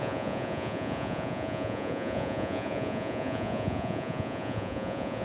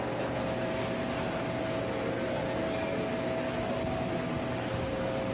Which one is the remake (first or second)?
first